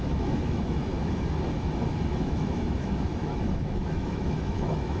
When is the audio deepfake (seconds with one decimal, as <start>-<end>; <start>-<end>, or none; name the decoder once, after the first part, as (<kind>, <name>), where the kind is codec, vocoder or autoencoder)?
0.0-0.9 (autoencoder, DAC-VAE); 2.1-5.0